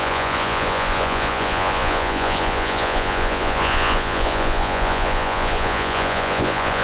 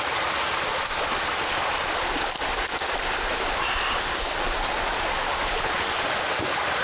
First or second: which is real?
second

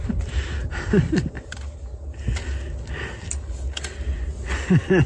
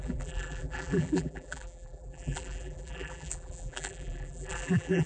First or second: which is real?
first